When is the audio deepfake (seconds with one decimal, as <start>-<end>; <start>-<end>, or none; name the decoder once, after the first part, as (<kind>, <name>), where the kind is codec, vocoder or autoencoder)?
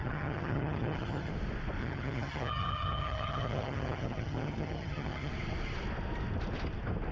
0.0-1.3 (vocoder, HiFi-GAN); 1.8-5.3